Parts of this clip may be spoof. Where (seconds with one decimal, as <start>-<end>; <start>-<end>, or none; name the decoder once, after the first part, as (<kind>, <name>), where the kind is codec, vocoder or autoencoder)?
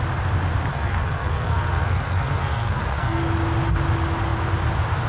0.7-3.2 (codec, SNAC)